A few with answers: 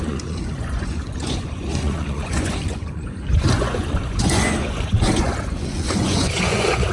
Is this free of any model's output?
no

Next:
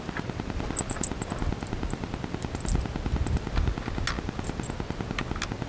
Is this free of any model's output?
yes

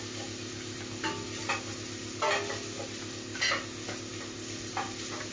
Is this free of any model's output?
yes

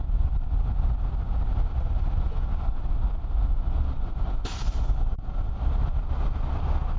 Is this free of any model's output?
yes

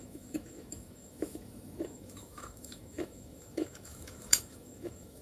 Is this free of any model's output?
no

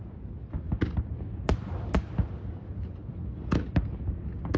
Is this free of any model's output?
yes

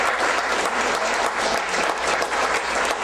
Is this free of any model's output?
yes